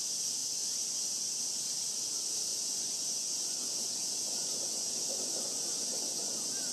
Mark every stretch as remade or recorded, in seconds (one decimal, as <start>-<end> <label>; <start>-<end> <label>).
0.0-0.4 recorded; 0.4-1.0 remade; 1.0-2.5 recorded; 2.5-6.7 remade